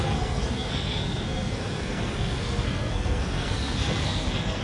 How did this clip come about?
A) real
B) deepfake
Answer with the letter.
B